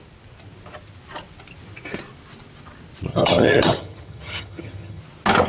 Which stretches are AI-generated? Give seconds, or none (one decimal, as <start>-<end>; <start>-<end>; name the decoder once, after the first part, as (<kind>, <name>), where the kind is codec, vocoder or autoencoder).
3.1-5.0 (vocoder, HiFi-GAN)